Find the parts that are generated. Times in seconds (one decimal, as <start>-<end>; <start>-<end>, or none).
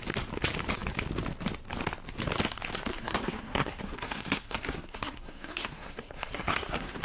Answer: 2.9-7.0